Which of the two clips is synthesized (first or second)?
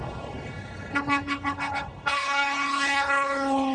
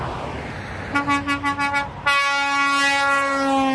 first